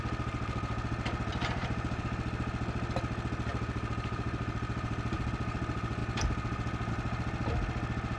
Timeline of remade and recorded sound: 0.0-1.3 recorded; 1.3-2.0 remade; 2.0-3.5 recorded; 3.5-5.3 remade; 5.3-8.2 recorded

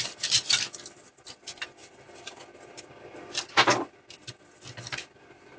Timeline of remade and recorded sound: 0.0-5.6 recorded

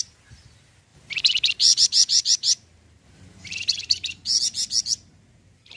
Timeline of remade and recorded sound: 0.0-0.9 recorded; 0.9-4.4 remade; 4.4-5.8 recorded

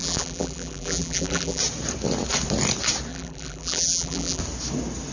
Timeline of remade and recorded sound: 0.0-1.6 remade; 1.6-3.1 recorded; 3.1-4.4 remade; 4.4-5.1 recorded

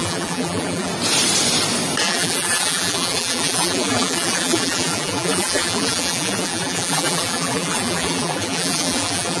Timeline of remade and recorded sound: 0.0-0.9 remade; 0.9-2.0 recorded; 2.0-9.4 remade